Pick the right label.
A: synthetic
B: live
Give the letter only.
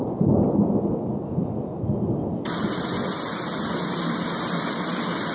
B